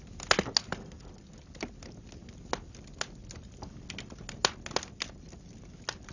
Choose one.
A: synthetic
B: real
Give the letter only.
B